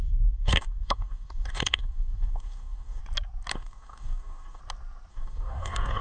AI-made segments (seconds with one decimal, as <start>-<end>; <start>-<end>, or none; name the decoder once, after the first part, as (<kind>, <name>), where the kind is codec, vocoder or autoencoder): 0.0-3.0 (codec, DAC); 3.5-4.6; 5.1-6.0